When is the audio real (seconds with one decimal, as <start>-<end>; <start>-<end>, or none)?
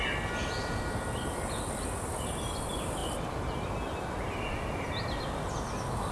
0.0-6.1